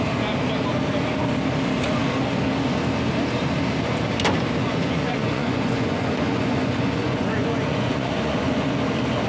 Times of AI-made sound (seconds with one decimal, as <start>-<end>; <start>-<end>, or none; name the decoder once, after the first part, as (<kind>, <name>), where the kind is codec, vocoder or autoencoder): 4.6-8.7 (vocoder, Vocos)